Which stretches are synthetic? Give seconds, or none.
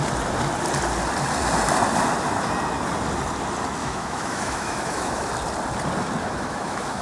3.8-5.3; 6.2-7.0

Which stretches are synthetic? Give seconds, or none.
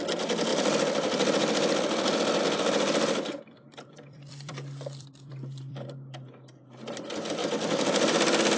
0.0-7.4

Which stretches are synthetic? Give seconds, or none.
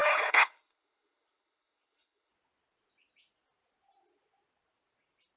0.0-2.3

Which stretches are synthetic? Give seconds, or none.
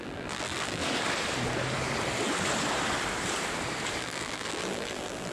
0.0-0.8; 4.0-5.3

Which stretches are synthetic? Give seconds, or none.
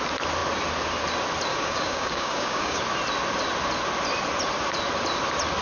1.5-2.8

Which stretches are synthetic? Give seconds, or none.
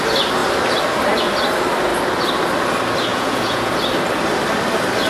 3.1-3.7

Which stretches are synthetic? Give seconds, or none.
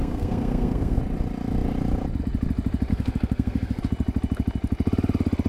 0.0-1.0; 2.9-3.8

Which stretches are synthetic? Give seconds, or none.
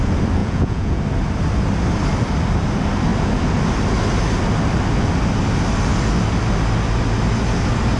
0.4-1.0